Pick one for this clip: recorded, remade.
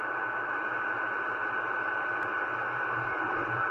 recorded